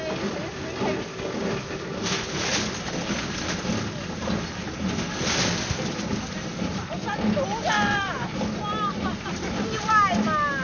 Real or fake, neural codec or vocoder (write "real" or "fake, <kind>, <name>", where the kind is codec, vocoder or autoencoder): real